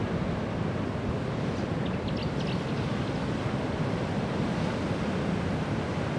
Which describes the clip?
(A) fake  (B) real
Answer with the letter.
B